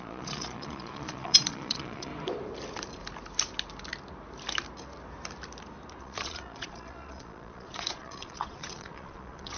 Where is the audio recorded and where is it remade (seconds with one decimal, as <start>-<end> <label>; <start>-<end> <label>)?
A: 0.0-2.1 remade; 2.1-6.0 recorded; 6.0-9.6 remade